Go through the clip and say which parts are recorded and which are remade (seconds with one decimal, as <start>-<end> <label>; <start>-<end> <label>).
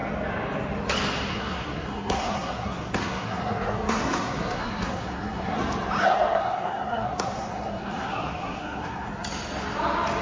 0.0-1.3 recorded; 1.3-5.6 remade; 5.6-6.0 recorded; 6.0-9.1 remade; 9.1-10.2 recorded